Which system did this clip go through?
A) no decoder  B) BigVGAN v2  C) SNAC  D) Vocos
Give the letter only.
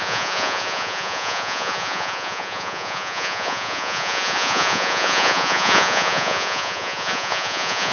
D